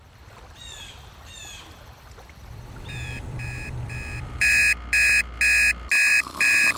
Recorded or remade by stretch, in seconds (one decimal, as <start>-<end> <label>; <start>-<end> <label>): 0.0-4.6 remade; 4.6-6.1 recorded; 6.1-6.8 remade